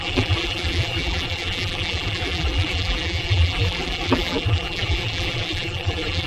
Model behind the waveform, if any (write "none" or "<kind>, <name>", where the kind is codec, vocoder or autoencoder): vocoder, BigVGAN v2